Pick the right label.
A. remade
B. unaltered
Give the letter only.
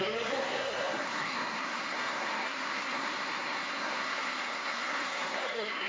A